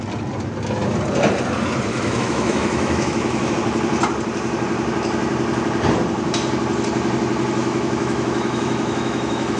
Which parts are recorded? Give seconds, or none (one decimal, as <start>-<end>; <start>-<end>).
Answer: 0.0-1.9; 3.5-7.6

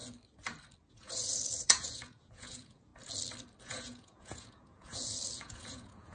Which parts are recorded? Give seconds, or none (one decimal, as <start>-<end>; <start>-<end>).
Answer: 0.0-0.9; 2.9-3.6